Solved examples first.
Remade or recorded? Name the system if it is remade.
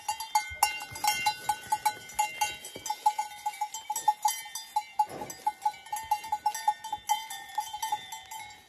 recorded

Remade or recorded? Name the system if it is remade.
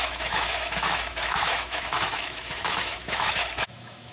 remade, autoencoder, DAC-VAE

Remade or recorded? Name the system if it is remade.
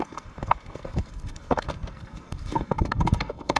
remade, codec, SNAC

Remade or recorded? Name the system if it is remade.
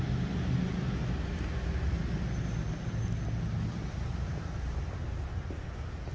recorded